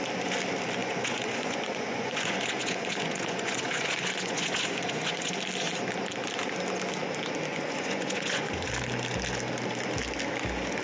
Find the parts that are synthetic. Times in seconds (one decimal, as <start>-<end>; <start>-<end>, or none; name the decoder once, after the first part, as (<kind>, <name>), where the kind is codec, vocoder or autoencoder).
0.8-5.3 (vocoder, Vocos); 7.5-8.6